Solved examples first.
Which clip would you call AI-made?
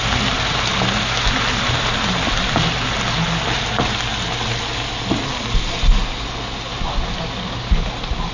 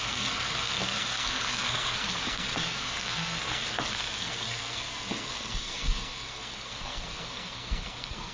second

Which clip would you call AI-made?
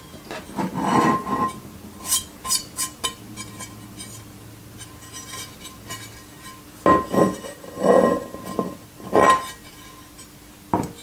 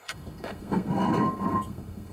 second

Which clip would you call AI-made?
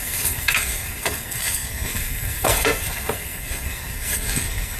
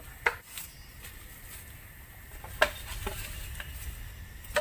first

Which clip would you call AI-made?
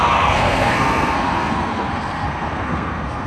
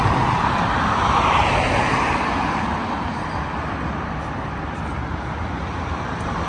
first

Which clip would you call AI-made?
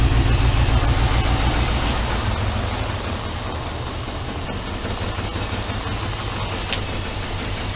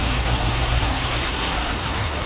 second